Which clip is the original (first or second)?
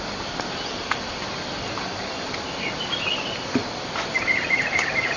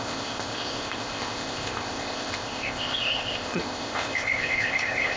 first